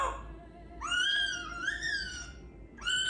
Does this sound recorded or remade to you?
recorded